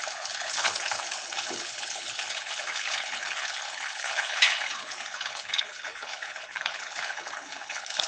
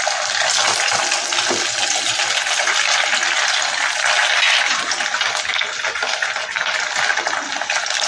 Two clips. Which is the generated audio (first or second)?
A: first